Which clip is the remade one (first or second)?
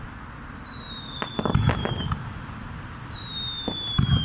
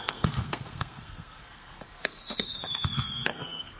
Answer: second